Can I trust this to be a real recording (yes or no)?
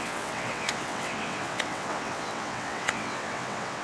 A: no